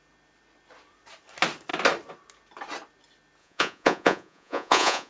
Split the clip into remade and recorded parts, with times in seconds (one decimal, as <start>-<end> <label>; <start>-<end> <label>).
0.0-3.4 recorded; 3.4-5.1 remade